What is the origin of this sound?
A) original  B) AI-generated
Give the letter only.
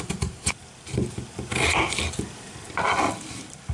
A